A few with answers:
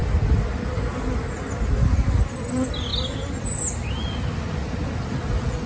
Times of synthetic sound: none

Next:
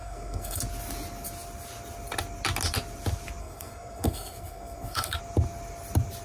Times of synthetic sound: 0.0-0.6; 3.4-5.2

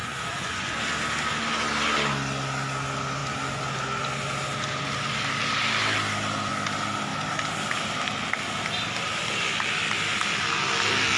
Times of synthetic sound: 0.0-0.7

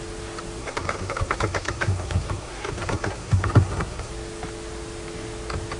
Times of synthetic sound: 0.6-4.1

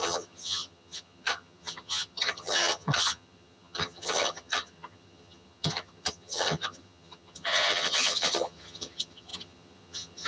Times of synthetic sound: 0.0-10.3

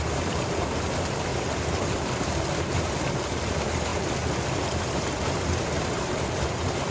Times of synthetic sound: 0.0-1.3; 3.5-3.9; 5.2-6.9

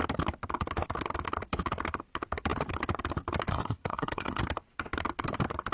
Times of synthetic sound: 3.5-4.4